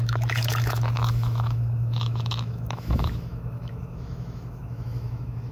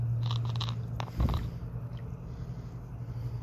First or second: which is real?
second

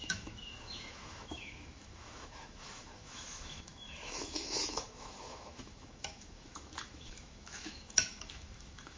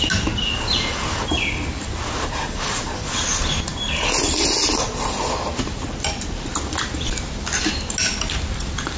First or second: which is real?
second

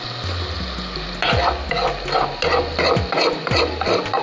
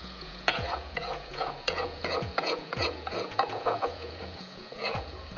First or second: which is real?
first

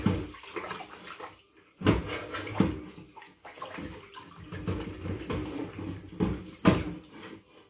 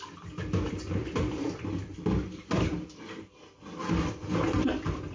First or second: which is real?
first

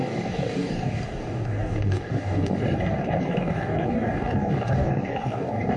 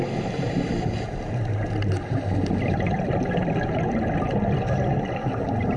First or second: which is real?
second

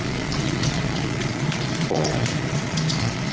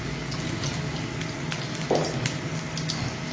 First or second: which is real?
second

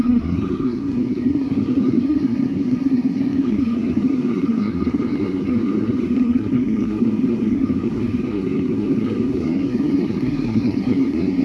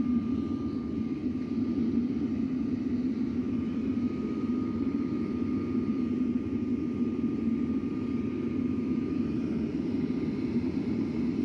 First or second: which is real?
second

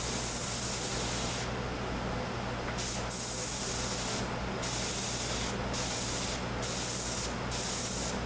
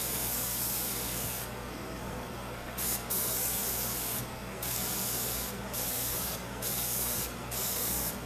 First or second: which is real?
first